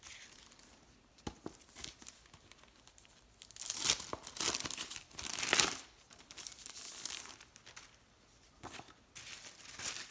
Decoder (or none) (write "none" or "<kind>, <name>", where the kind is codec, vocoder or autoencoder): none